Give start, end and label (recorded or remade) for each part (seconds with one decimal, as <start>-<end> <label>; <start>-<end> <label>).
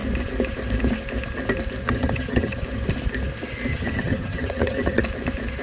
0.0-1.8 recorded; 1.8-2.6 remade; 2.6-3.7 recorded; 3.7-5.0 remade; 5.0-5.6 recorded